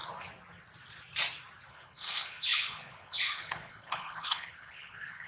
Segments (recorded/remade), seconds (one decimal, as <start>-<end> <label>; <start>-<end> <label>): 0.0-1.7 recorded; 1.7-5.3 remade